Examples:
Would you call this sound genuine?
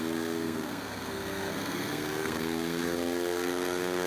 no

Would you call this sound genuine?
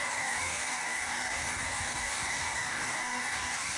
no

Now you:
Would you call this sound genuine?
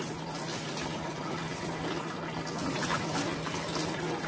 yes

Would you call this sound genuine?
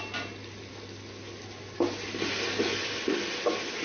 yes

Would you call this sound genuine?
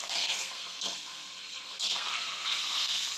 no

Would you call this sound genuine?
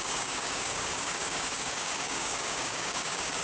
no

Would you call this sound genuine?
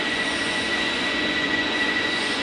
no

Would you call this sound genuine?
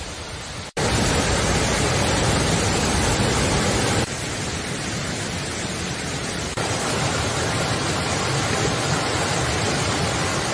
yes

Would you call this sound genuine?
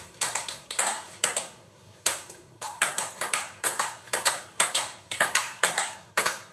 no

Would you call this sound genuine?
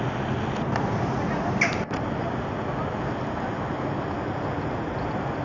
yes